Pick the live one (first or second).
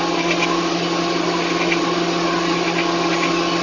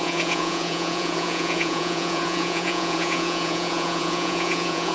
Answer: first